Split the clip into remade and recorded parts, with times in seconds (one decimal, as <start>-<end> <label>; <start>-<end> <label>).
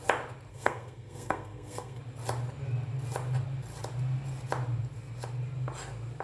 0.0-0.5 recorded; 0.5-2.0 remade; 2.0-6.2 recorded